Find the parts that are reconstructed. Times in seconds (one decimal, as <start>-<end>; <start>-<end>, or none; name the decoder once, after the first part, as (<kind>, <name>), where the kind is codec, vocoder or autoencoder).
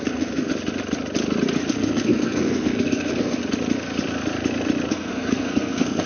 0.0-0.5 (codec, SNAC); 1.7-3.4; 4.9-6.1